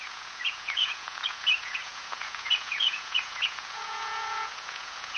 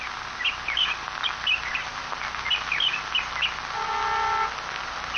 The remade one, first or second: first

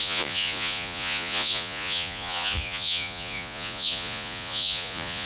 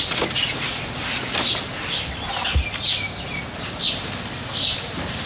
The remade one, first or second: first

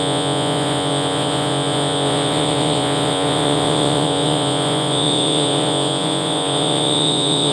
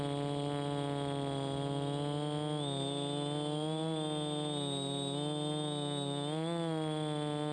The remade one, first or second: first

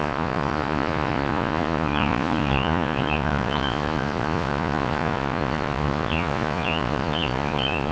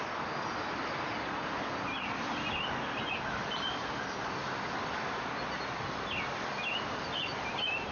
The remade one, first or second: first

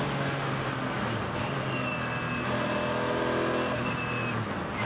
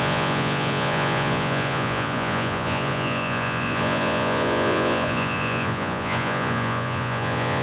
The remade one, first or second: second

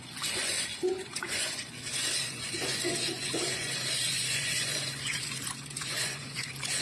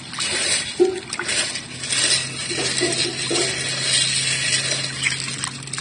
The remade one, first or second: first